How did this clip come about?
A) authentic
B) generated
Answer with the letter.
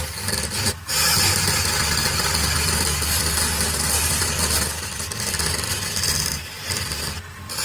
A